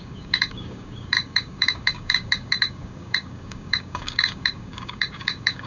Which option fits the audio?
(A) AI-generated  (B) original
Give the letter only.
A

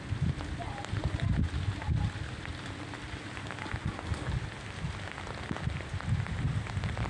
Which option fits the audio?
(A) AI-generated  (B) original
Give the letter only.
B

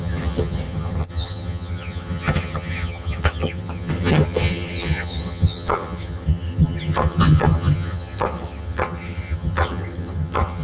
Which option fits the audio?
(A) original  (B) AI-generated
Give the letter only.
B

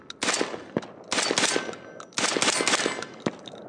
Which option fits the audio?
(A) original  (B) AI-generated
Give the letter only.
A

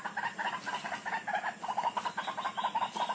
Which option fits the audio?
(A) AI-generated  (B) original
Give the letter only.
B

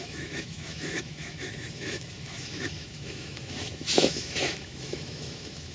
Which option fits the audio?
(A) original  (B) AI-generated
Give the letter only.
B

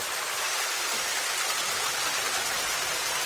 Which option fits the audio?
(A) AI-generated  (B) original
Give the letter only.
B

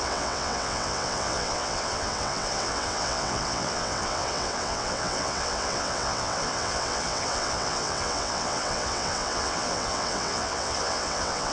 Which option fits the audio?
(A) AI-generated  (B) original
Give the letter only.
A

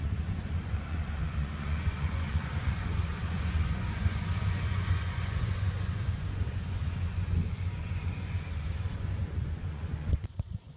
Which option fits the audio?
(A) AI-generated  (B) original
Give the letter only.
A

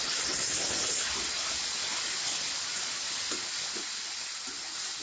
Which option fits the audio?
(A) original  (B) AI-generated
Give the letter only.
A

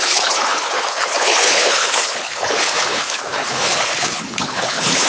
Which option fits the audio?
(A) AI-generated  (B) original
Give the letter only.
A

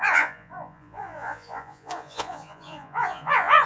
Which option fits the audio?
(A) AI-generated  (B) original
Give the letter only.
A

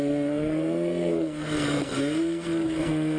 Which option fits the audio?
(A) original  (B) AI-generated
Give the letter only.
B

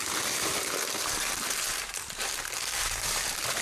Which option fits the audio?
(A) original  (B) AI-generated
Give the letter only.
B